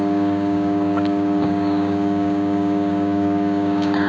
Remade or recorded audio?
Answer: remade